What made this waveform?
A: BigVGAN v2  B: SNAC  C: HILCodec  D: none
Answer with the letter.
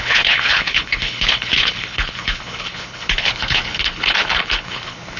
C